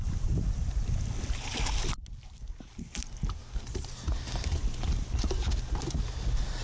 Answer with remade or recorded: recorded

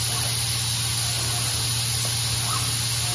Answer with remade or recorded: recorded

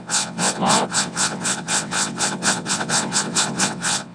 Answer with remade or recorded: remade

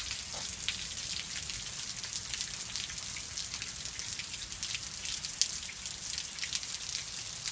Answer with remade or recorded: recorded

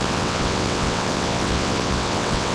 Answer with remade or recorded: remade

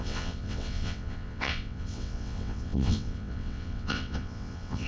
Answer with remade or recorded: remade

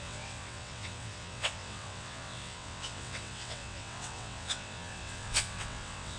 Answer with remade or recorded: remade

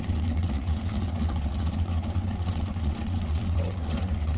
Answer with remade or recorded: remade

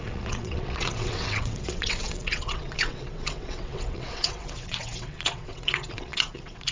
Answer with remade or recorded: remade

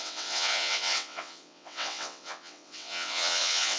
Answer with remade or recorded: remade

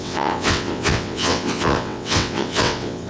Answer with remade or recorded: remade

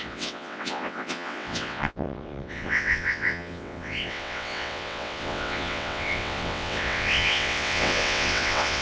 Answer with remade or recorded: remade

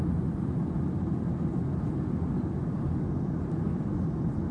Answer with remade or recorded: recorded